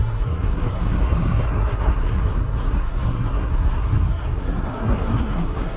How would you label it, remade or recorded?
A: remade